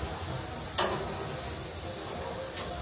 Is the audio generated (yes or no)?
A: no